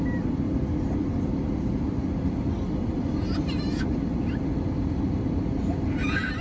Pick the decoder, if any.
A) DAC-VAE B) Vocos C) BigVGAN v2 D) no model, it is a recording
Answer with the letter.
D